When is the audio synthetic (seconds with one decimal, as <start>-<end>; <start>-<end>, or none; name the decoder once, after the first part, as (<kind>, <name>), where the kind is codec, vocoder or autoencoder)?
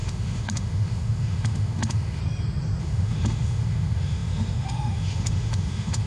0.0-2.2 (autoencoder, DAC-VAE); 2.8-6.1